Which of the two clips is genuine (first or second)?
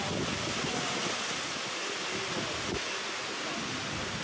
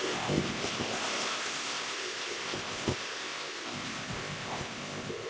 first